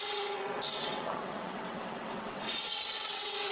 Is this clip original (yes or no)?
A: no